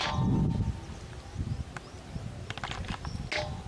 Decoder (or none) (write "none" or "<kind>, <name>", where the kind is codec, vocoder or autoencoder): none